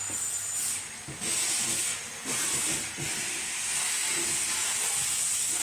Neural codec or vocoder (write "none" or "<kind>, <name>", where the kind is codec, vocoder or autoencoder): none